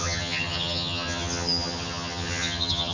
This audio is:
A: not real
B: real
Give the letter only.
A